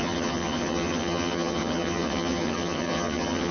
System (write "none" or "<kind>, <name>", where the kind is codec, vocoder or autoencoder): vocoder, HiFi-GAN